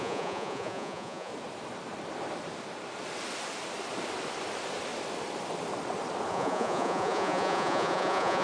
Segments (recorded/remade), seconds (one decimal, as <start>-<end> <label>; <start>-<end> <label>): 0.0-1.3 remade; 1.3-6.3 recorded; 6.3-8.4 remade